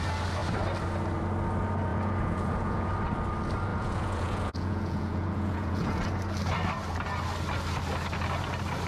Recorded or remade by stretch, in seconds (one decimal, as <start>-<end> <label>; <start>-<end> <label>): 0.0-1.9 recorded; 1.9-2.9 remade; 2.9-3.7 recorded; 3.7-6.0 remade; 6.0-8.9 recorded